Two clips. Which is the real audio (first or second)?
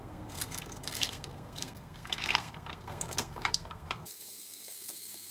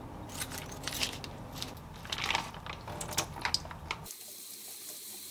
second